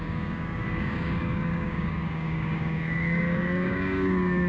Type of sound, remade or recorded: remade